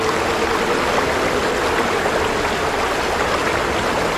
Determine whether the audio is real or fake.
real